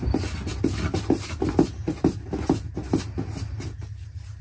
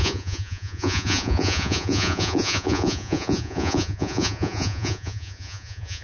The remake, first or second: second